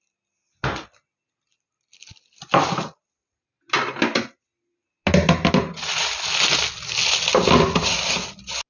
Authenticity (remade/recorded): recorded